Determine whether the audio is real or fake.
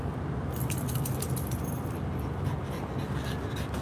real